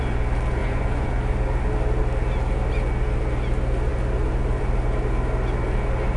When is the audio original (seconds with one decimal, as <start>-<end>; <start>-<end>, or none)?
0.0-0.6; 1.1-6.2